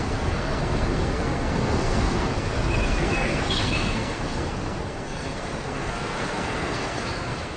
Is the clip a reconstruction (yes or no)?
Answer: yes